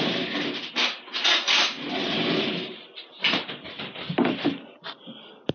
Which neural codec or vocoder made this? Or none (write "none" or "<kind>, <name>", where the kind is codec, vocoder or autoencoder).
none